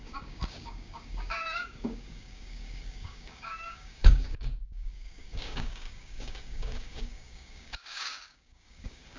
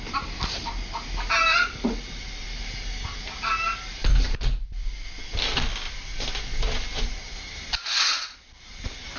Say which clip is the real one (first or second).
second